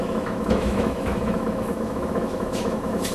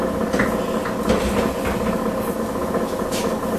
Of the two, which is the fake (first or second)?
first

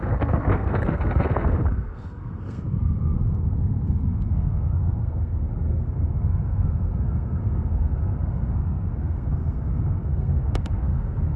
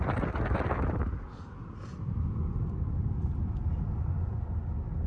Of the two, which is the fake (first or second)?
first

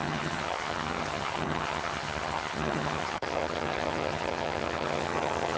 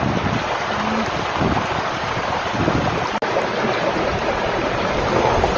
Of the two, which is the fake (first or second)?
first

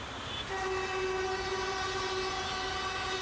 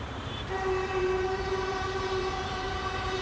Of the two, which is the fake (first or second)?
second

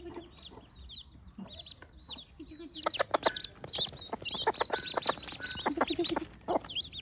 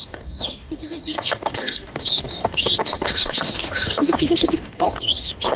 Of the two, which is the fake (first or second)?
second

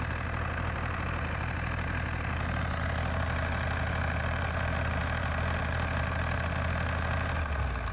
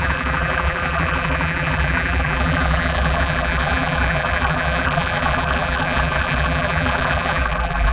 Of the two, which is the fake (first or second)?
second